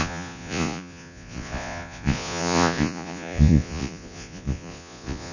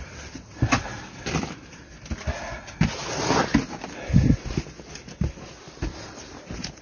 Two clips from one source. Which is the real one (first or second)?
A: second